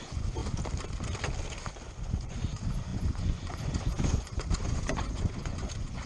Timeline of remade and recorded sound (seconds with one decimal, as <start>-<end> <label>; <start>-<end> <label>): 0.0-0.4 remade; 0.4-1.9 recorded; 1.9-6.1 remade

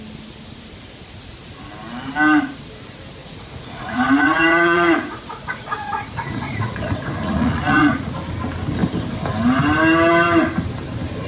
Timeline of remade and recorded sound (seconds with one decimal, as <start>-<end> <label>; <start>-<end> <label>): 0.0-3.2 recorded; 3.2-8.1 remade; 8.1-11.3 recorded